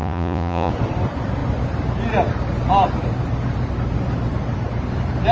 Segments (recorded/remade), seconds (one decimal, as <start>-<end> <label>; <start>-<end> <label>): 0.0-0.7 remade; 0.7-5.3 recorded